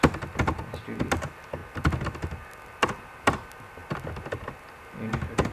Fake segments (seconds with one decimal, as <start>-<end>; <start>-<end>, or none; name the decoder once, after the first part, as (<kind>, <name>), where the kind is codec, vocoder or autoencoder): none